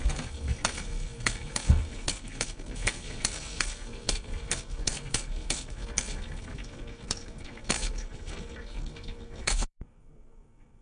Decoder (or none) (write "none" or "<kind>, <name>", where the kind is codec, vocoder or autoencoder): codec, SNAC